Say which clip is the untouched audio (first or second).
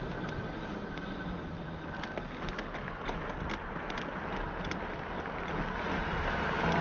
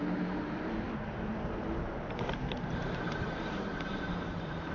first